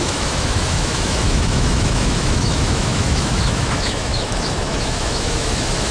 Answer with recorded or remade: remade